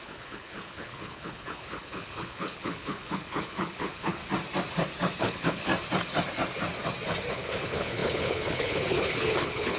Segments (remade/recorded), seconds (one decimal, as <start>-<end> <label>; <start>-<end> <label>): 0.0-4.2 remade; 4.2-5.2 recorded; 5.2-5.7 remade; 5.7-7.3 recorded; 7.3-9.8 remade